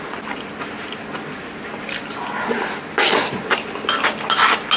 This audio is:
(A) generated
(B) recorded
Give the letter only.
B